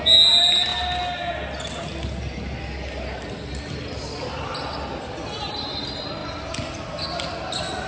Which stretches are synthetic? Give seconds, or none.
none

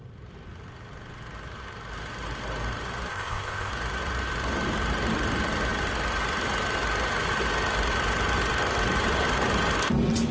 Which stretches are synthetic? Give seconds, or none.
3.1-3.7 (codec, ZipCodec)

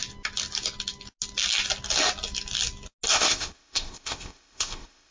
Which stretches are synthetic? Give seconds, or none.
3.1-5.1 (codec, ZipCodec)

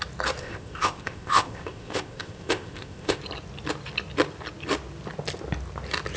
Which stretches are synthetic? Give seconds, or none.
0.4-3.2 (codec, ZipCodec)

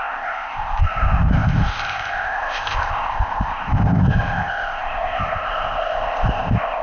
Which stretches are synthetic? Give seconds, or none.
0.0-6.8 (codec, ZipCodec)

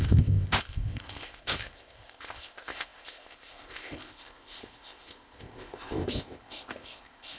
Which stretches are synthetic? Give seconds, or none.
0.0-7.4 (codec, ZipCodec)

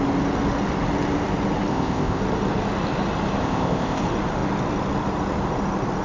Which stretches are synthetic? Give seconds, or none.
1.7-2.2 (codec, ZipCodec); 3.4-4.0